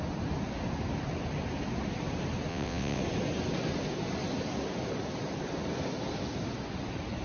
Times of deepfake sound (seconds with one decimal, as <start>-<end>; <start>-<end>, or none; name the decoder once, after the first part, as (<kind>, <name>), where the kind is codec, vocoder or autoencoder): 2.5-3.0 (vocoder, WaveNeXt)